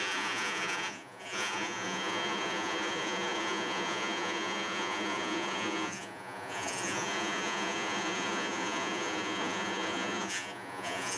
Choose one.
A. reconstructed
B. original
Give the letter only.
A